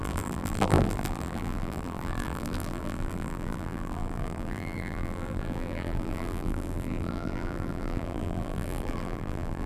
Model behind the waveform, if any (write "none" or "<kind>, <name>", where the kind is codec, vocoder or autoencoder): vocoder, BigVGAN v2